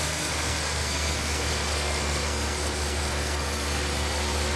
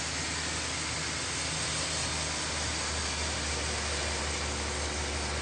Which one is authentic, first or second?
second